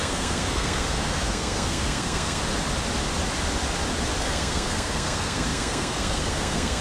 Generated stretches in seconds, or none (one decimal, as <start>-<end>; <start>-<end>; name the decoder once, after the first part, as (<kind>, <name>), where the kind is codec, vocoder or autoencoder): 0.0-2.4 (codec, SNAC); 4.2-6.8